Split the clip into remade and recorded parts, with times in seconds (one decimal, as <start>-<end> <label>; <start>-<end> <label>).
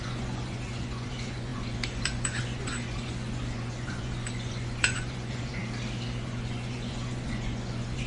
0.0-5.6 remade; 5.6-6.2 recorded; 6.2-8.1 remade